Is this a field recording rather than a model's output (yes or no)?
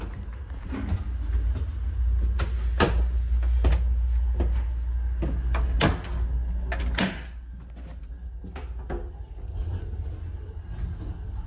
yes